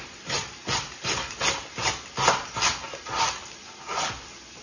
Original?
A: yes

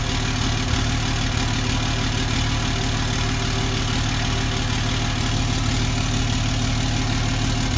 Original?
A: yes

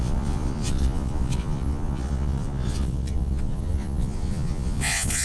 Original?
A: no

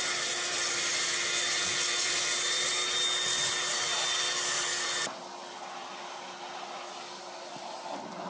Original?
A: yes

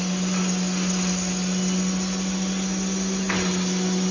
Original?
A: yes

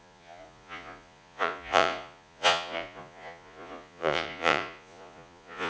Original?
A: no